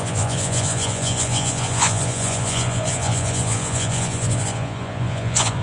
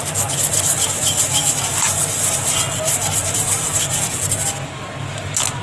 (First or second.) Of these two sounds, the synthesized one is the first